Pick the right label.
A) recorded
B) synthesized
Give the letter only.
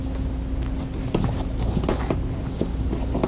A